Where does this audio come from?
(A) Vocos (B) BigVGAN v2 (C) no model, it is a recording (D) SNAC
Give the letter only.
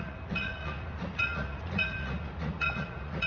A